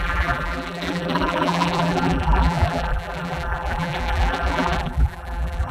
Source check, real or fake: fake